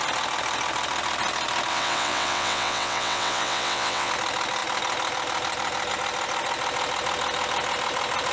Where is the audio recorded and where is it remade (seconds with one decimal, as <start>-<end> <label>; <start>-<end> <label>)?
0.0-1.7 recorded; 1.7-4.1 remade; 4.1-8.3 recorded